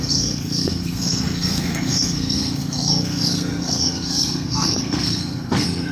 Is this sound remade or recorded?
remade